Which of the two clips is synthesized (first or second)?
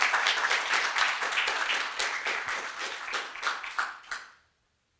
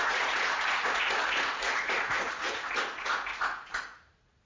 second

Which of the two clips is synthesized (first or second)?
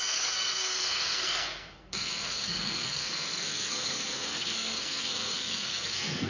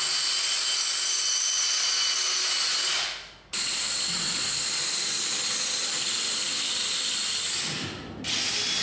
first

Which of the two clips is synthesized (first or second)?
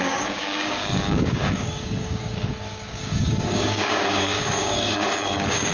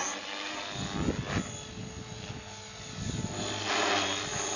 first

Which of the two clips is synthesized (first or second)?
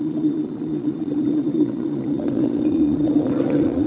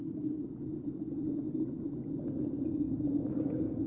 first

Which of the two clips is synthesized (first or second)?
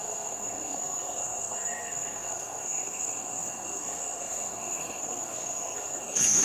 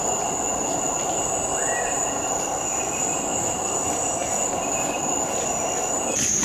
first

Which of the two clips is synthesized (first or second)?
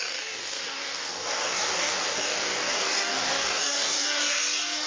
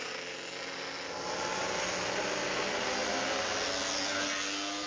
first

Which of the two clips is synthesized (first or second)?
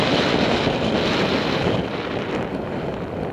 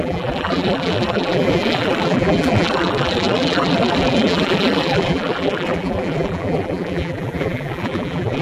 second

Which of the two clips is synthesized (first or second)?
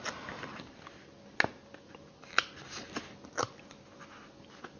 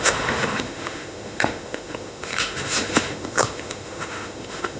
second